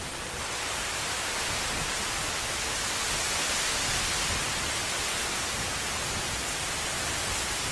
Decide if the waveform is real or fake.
real